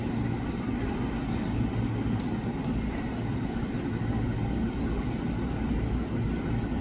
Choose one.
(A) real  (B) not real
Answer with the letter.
A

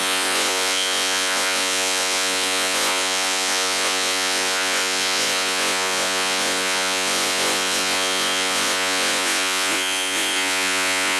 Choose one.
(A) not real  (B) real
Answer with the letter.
A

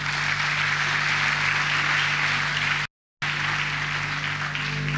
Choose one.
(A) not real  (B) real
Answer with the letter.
B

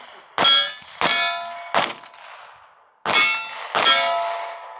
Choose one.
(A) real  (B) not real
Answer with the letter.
A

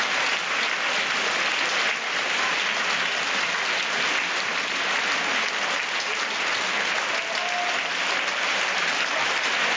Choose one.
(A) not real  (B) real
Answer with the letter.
B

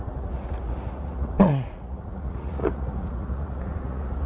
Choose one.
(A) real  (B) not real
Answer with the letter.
B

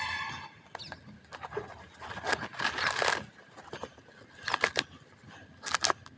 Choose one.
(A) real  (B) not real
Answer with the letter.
A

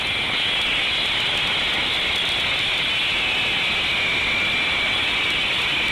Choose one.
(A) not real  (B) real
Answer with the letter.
B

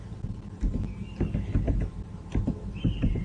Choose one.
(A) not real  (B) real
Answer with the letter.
A